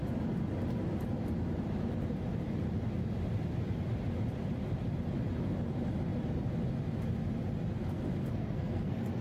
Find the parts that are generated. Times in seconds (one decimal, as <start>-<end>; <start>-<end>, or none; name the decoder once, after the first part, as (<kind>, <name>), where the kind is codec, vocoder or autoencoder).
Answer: 7.8-9.2 (codec, SNAC)